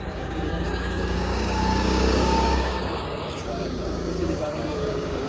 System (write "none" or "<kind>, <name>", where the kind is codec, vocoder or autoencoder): codec, DAC